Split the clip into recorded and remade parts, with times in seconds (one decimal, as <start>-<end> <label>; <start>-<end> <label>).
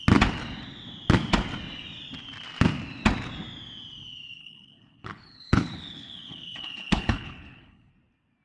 0.0-4.4 recorded; 4.4-7.9 remade; 7.9-8.4 recorded